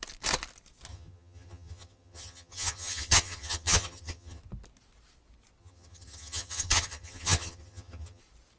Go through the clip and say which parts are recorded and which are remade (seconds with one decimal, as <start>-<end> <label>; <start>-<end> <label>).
0.0-0.9 recorded; 0.9-4.4 remade; 4.4-5.6 recorded; 5.6-8.2 remade; 8.2-8.6 recorded